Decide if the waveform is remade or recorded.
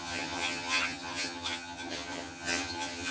remade